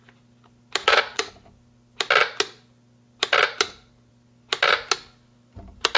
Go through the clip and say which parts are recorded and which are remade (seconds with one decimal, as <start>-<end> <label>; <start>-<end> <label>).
0.0-0.8 recorded; 0.8-1.3 remade; 1.3-6.0 recorded